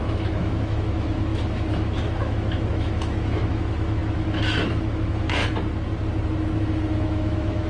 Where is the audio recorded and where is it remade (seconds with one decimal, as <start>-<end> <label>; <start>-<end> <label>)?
0.0-5.4 remade; 5.4-6.6 recorded; 6.6-7.7 remade